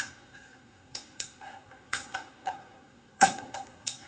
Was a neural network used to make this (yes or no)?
yes